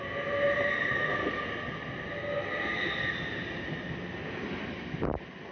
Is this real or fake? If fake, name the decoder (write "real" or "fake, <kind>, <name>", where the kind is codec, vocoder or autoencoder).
real